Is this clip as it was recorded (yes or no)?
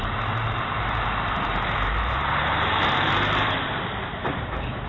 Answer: no